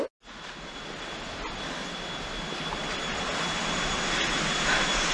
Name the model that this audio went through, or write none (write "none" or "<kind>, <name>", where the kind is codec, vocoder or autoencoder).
none